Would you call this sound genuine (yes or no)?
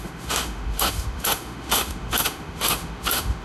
no